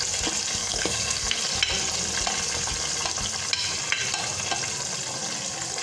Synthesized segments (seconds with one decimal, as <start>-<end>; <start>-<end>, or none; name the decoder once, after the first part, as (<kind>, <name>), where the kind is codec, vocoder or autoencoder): 0.6-1.4 (codec, SNAC)